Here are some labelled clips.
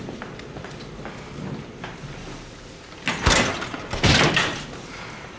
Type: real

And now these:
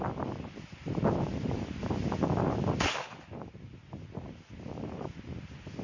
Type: real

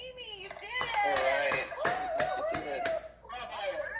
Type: real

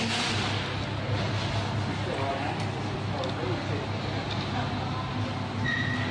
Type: real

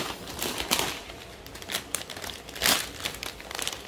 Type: fake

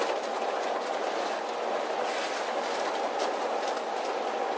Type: real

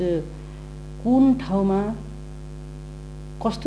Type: real